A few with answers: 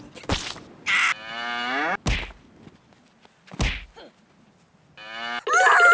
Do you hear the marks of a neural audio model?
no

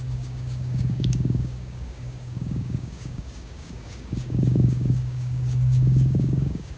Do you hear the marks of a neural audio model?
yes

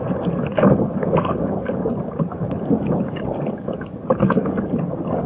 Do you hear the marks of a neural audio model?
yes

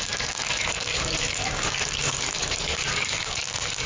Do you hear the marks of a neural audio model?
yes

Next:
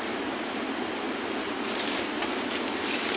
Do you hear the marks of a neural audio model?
no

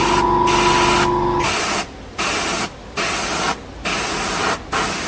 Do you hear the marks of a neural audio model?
no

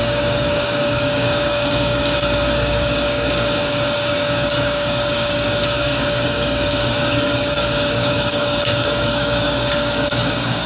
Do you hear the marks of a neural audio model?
yes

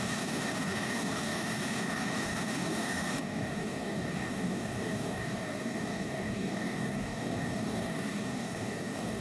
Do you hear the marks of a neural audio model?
yes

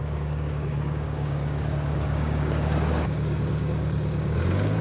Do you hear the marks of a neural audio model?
yes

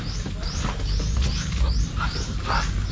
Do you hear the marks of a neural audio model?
no